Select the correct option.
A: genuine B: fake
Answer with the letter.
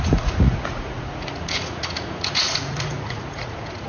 B